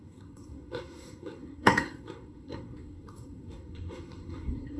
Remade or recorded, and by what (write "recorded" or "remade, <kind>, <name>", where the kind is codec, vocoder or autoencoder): remade, codec, SNAC